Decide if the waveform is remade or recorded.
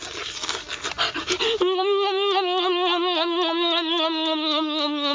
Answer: recorded